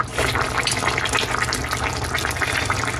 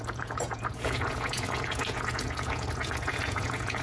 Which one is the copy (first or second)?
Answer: second